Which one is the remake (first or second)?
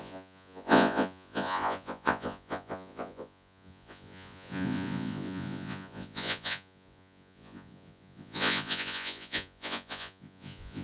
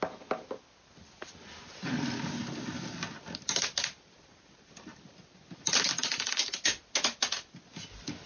first